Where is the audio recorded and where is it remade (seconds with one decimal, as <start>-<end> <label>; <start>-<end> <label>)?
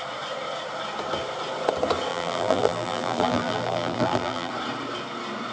0.0-2.1 recorded; 2.1-4.5 remade; 4.5-5.5 recorded